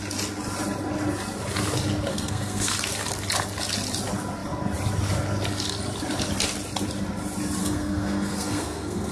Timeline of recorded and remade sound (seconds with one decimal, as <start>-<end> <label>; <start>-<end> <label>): 0.0-2.1 recorded; 2.1-2.8 remade; 2.8-7.6 recorded; 7.6-9.1 remade

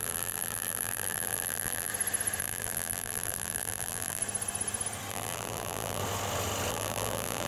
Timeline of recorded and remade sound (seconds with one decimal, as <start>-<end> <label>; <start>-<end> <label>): 0.0-1.9 remade; 1.9-2.4 recorded; 2.4-4.2 remade; 4.2-5.1 recorded; 5.1-6.0 remade; 6.0-6.7 recorded; 6.7-7.5 remade

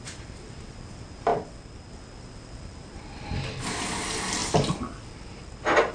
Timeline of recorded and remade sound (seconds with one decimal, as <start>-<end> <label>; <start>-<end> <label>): 0.0-5.9 recorded

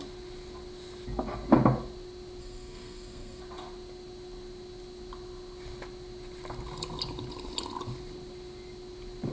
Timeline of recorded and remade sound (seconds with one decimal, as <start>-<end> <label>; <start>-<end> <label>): 0.0-2.4 recorded; 2.4-3.4 remade; 3.4-9.3 recorded

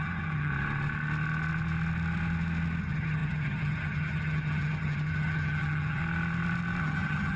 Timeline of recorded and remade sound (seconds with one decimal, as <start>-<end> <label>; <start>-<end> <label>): 0.0-0.5 remade; 0.5-2.8 recorded; 2.8-6.0 remade; 6.0-6.8 recorded; 6.8-7.4 remade

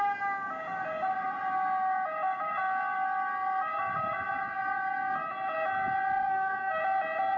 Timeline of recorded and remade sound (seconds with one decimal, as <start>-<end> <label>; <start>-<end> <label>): 0.0-6.2 recorded; 6.2-6.8 remade; 6.8-7.4 recorded